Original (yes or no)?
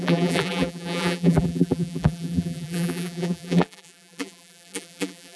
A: no